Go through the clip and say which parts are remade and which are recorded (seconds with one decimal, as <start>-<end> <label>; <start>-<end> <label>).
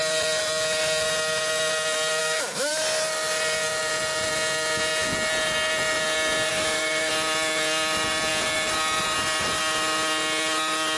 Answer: 0.0-2.2 recorded; 2.2-2.7 remade; 2.7-6.5 recorded; 6.5-7.1 remade; 7.1-11.0 recorded